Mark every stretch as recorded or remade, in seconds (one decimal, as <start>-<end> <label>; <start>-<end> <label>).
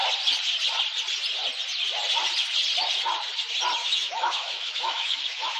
0.0-3.8 recorded; 3.8-5.6 remade